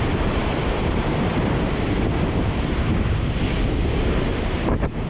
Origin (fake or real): fake